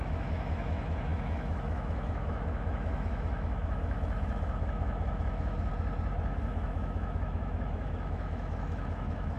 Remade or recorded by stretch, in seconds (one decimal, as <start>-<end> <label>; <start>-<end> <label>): 0.0-5.7 remade; 5.7-6.4 recorded; 6.4-9.4 remade